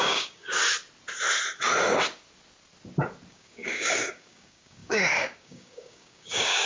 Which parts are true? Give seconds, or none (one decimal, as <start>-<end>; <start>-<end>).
0.6-3.3